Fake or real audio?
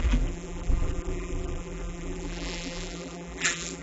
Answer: fake